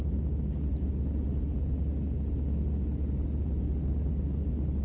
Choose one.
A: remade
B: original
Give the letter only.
B